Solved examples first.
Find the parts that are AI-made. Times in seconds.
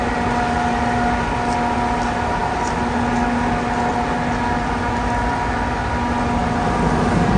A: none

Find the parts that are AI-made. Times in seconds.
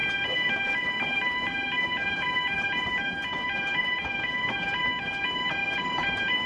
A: 0.0-3.2 (vocoder, BigVGAN v2); 3.8-6.5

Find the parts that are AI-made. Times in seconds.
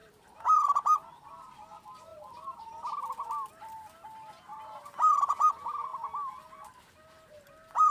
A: 0.0-1.3 (vocoder, BigVGAN v2); 2.1-2.7; 4.5-5.2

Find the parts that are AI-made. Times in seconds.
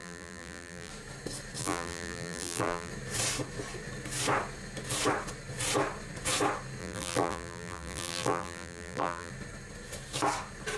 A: 0.0-0.9 (vocoder, BigVGAN v2); 1.6-2.9; 6.8-9.3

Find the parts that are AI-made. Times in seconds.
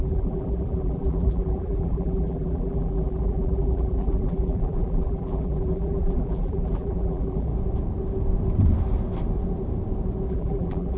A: 0.0-7.5 (vocoder, BigVGAN v2); 10.3-11.0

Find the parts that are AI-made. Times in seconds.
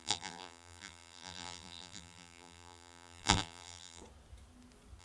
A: 0.0-4.0 (vocoder, BigVGAN v2)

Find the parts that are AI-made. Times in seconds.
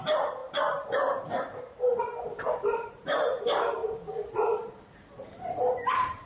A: 0.0-3.8 (vocoder, BigVGAN v2); 4.8-6.3